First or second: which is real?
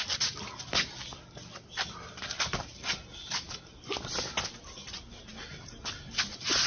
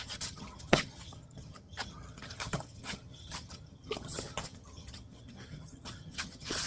first